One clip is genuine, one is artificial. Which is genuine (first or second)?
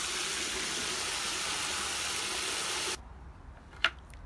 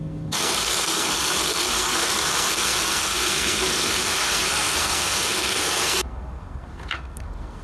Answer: first